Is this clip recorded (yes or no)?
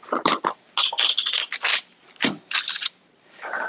yes